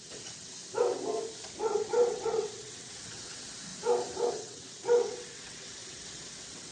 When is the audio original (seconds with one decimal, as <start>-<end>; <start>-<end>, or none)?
0.6-1.6; 3.7-4.3